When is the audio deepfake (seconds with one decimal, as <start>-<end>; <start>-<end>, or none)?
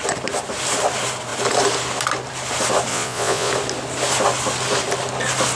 2.9-3.5